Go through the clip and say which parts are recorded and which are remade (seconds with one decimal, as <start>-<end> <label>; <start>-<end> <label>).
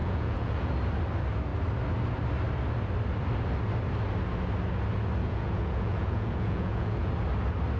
0.0-0.7 remade; 0.7-5.2 recorded; 5.2-7.1 remade; 7.1-7.8 recorded